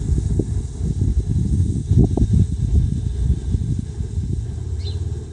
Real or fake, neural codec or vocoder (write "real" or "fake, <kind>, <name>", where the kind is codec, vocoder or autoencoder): real